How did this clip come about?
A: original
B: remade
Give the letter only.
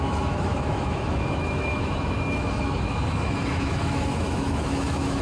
B